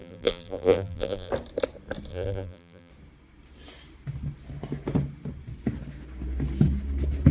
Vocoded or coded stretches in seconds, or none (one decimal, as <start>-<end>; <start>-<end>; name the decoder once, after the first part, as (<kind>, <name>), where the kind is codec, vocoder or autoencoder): 0.0-1.3 (vocoder, BigVGAN v2); 2.1-2.9